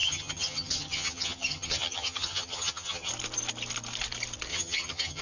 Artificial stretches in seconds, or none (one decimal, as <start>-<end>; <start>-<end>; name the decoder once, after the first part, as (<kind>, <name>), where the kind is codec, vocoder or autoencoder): 0.0-3.1 (vocoder, HiFi-GAN); 4.5-5.2